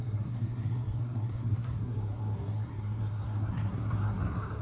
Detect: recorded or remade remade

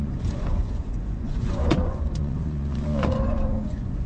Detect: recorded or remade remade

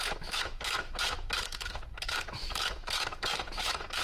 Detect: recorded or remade remade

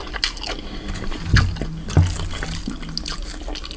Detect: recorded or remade recorded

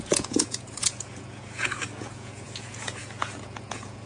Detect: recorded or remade remade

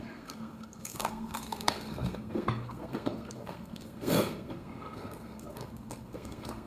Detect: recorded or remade remade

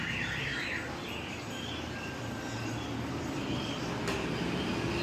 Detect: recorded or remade recorded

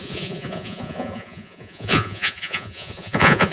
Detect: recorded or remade remade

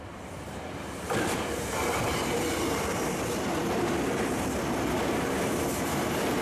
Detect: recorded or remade recorded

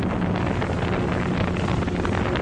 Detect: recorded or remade recorded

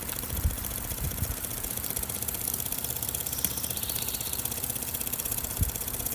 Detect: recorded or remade remade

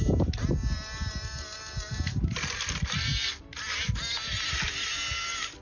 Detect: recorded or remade recorded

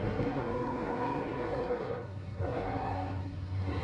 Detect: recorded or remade remade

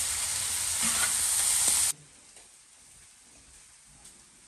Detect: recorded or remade recorded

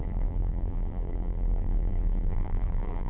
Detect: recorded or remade remade